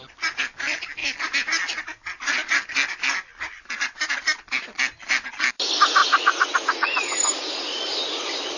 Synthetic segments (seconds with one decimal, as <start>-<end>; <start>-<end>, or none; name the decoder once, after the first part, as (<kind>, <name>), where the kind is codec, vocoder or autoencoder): 6.0-7.8 (vocoder, Vocos)